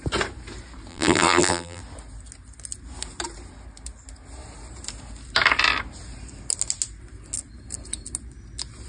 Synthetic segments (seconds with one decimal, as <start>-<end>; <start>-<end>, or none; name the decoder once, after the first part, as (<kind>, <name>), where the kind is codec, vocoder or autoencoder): 0.9-1.8 (vocoder, BigVGAN v2)